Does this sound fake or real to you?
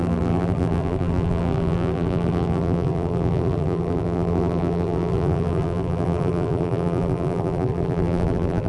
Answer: fake